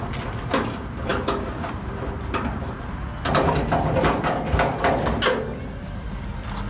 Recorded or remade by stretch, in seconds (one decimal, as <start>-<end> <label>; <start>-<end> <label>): 0.0-6.7 recorded

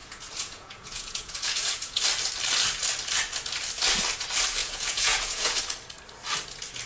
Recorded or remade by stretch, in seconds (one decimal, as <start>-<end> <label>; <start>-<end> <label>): 0.0-2.0 remade; 2.0-4.6 recorded; 4.6-5.6 remade; 5.6-6.9 recorded

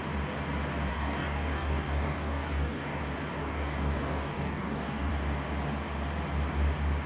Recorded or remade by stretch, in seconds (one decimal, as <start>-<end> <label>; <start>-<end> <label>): 0.0-0.9 recorded; 0.9-3.0 remade; 3.0-3.4 recorded; 3.4-5.1 remade; 5.1-7.1 recorded

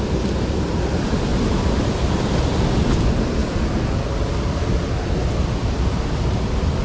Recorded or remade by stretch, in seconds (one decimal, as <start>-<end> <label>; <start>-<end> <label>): 0.0-6.8 recorded

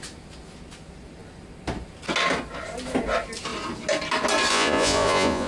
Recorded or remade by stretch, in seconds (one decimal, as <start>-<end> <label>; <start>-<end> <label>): 0.0-4.5 recorded; 4.5-5.5 remade

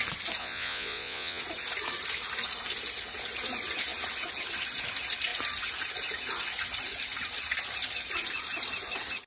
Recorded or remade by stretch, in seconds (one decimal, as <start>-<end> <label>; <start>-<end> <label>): 0.0-0.4 recorded; 0.4-1.4 remade; 1.4-9.3 recorded

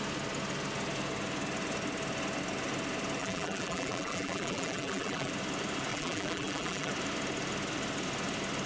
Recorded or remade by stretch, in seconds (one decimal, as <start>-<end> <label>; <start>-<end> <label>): 0.0-3.2 recorded; 3.2-5.3 remade; 5.3-5.9 recorded; 5.9-6.9 remade; 6.9-8.7 recorded